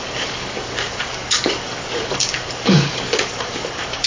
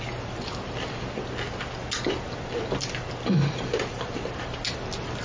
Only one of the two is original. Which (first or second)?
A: second